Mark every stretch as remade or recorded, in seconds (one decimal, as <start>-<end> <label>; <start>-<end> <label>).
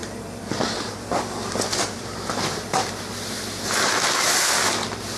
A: 0.0-3.0 remade; 3.0-5.2 recorded